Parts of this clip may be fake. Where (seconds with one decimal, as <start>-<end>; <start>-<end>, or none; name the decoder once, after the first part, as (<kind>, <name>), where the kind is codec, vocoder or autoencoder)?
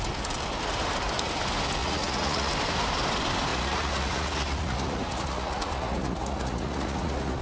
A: 1.8-2.5 (vocoder, Vocos); 3.5-7.4